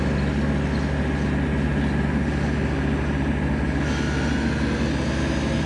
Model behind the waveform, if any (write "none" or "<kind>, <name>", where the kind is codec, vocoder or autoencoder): none